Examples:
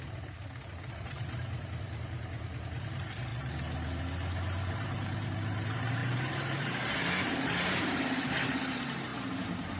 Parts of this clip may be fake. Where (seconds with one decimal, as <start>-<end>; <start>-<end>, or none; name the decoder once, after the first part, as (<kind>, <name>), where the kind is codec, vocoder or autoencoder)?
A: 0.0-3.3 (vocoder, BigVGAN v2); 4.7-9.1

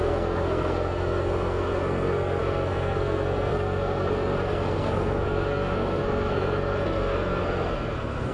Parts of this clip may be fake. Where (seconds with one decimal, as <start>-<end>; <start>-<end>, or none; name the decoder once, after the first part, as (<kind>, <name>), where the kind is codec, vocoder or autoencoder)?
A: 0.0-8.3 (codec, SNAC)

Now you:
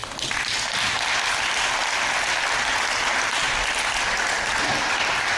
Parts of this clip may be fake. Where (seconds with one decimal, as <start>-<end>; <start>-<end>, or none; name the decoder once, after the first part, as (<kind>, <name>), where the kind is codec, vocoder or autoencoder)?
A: none

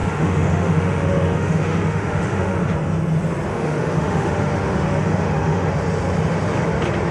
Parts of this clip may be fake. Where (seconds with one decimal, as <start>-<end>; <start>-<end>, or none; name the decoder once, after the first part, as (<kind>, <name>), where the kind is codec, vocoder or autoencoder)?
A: 0.0-2.6 (autoencoder, DAC-VAE); 3.5-5.7

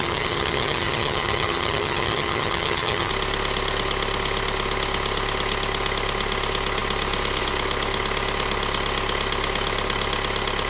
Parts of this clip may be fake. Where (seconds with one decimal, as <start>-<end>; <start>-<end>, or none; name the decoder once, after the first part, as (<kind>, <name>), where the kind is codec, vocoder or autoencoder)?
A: 0.0-3.1 (vocoder, HiFi-GAN)